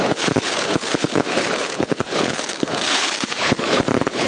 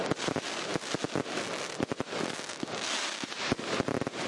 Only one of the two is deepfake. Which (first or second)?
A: first